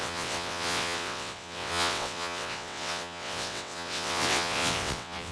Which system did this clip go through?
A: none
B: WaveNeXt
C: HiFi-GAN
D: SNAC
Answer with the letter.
B